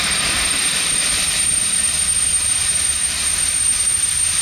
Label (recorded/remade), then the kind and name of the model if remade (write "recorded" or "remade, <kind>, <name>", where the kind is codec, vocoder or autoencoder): remade, vocoder, BigVGAN v2